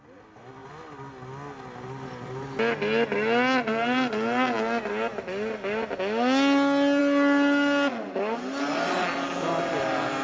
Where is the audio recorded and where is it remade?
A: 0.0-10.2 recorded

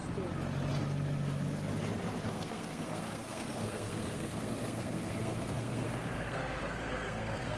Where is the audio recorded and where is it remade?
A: 0.0-2.3 recorded; 2.3-7.6 remade

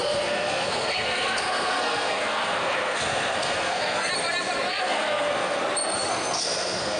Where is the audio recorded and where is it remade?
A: 0.0-4.1 remade; 4.1-4.7 recorded; 4.7-5.6 remade; 5.6-6.1 recorded; 6.1-7.0 remade